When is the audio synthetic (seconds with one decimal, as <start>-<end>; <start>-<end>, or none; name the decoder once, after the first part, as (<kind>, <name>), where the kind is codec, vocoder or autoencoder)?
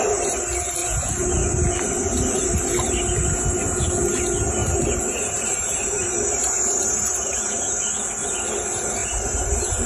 4.6-7.5 (vocoder, BigVGAN v2); 9.0-9.9